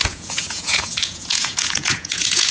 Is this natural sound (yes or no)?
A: no